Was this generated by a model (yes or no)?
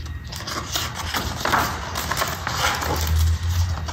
no